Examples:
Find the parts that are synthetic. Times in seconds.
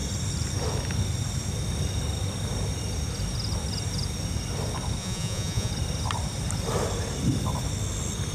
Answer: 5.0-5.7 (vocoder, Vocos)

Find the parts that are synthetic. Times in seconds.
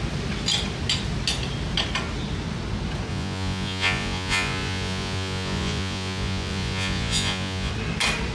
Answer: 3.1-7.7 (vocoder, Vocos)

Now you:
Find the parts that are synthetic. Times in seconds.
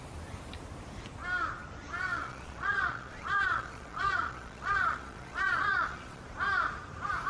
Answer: 2.1-6.2 (vocoder, Vocos)